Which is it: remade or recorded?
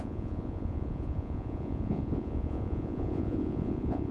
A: remade